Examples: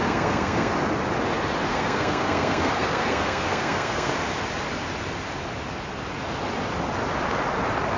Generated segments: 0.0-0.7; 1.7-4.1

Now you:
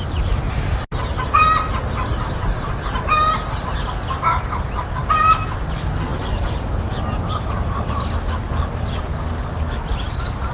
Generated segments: none

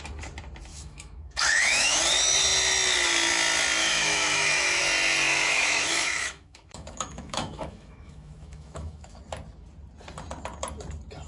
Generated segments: 0.7-2.0; 3.8-4.8; 5.3-9.2

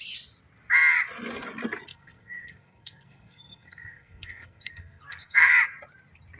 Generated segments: 1.9-5.5

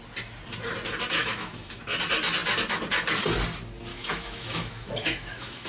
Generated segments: 1.2-1.8; 3.9-5.7

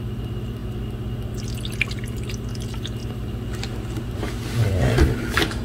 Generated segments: none

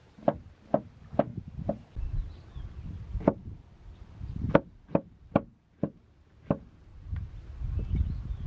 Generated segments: 0.0-0.5; 3.1-5.8; 6.9-7.4

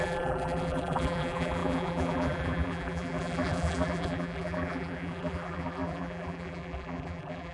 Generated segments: 0.0-7.5